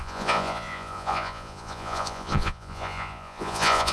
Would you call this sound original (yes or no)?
no